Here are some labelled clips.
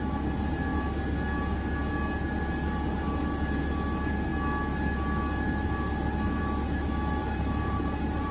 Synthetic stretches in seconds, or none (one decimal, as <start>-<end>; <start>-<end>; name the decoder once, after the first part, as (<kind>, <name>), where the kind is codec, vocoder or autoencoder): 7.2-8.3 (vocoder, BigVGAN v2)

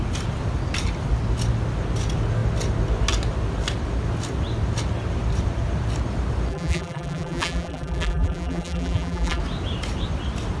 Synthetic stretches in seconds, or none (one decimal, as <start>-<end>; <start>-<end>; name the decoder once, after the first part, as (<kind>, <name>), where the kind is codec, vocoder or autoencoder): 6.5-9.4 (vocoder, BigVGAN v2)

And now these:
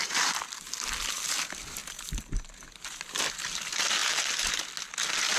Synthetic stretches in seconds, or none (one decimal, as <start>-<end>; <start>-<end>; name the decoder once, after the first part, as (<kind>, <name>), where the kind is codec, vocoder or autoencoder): 4.0-4.6 (vocoder, BigVGAN v2)

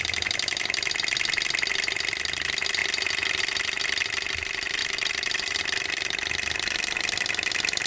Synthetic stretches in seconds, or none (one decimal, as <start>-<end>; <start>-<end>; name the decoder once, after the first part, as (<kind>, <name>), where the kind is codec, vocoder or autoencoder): 4.8-5.6 (vocoder, BigVGAN v2)

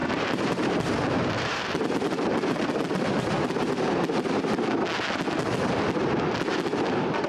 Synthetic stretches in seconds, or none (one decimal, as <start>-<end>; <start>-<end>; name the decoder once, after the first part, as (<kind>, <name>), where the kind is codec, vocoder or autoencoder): 0.0-4.4 (vocoder, BigVGAN v2)

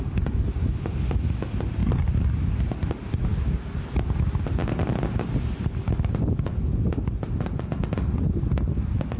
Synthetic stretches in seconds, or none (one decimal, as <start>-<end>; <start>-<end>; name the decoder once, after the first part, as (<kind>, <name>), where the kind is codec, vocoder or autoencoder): 1.8-2.6 (vocoder, BigVGAN v2)

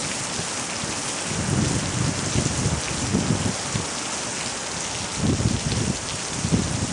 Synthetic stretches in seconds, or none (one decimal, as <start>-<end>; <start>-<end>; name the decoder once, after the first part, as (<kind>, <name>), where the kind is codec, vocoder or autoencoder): none

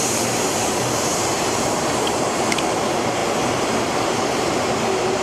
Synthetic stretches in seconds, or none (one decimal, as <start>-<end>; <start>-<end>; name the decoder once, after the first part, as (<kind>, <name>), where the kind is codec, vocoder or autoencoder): 0.0-3.2 (vocoder, BigVGAN v2); 3.8-5.2